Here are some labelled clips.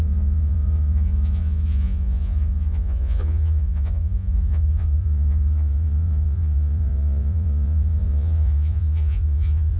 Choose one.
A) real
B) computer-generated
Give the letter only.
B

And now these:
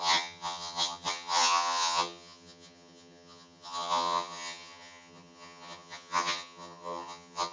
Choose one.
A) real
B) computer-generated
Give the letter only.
B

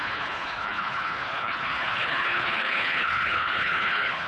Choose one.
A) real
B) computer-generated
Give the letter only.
B